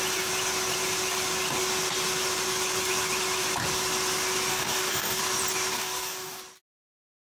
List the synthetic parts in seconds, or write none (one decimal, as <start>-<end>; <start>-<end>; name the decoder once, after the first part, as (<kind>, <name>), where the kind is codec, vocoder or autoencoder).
4.5-5.2 (codec, DAC); 5.7-6.4